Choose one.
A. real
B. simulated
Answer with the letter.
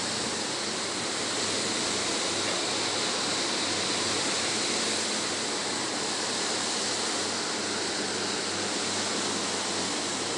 A